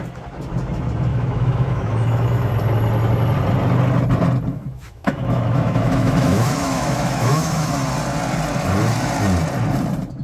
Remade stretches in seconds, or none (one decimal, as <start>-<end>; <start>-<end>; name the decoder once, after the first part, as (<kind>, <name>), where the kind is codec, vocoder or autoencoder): 1.1-2.5 (autoencoder, DAC-VAE); 4.5-7.7